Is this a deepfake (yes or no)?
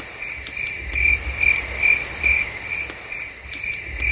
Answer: no